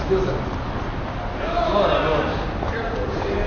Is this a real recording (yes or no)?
yes